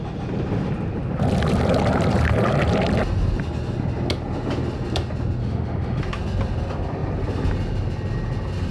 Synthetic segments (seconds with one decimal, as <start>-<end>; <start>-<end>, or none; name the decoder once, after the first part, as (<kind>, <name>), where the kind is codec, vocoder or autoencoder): 5.4-6.0 (autoencoder, DAC-VAE)